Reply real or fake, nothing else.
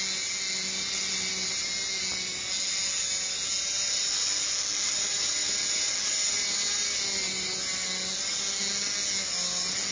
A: real